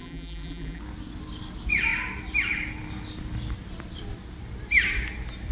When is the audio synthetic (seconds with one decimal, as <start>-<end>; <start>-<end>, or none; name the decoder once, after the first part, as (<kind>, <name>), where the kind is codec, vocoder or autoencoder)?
0.0-0.8 (vocoder, BigVGAN v2)